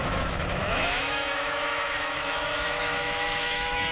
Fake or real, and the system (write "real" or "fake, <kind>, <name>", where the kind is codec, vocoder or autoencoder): fake, autoencoder, DAC-VAE